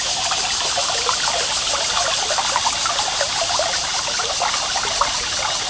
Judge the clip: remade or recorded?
recorded